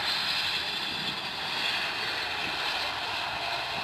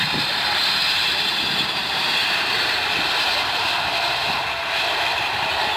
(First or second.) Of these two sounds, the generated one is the second